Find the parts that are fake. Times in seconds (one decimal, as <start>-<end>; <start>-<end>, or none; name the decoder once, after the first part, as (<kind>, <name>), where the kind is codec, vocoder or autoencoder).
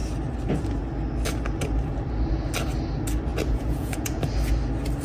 3.3-4.2 (vocoder, Vocos)